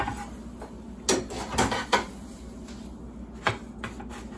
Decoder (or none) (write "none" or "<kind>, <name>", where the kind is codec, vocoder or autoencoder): none